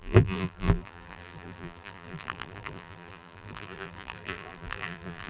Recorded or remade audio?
remade